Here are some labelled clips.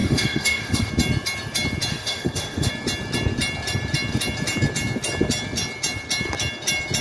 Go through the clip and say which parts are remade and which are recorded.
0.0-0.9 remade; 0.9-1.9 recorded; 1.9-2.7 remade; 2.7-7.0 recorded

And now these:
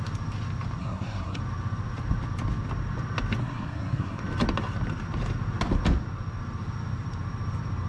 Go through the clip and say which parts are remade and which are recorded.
0.0-0.8 recorded; 0.8-1.4 remade; 1.4-3.4 recorded; 3.4-4.2 remade; 4.2-7.9 recorded

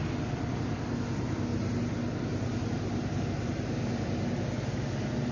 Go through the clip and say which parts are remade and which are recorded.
0.0-5.3 recorded

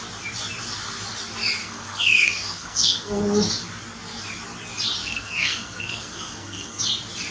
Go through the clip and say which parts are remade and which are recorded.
0.0-1.6 recorded; 1.6-3.2 remade; 3.2-5.0 recorded; 5.0-6.8 remade; 6.8-7.3 recorded

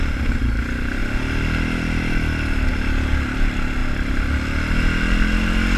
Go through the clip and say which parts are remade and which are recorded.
0.0-5.8 recorded

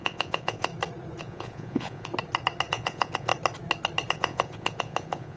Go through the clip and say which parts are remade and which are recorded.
0.0-0.7 remade; 0.7-1.2 recorded; 1.2-2.1 remade; 2.1-2.7 recorded; 2.7-3.3 remade; 3.3-4.1 recorded; 4.1-5.4 remade